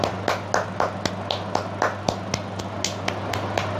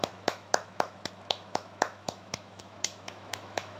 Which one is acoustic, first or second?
first